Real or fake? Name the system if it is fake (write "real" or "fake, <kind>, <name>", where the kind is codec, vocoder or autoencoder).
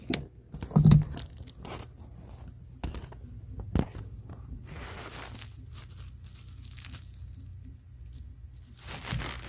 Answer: real